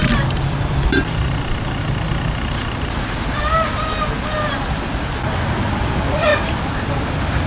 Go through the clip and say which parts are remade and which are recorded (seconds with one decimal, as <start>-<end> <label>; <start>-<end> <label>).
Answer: 0.0-7.5 recorded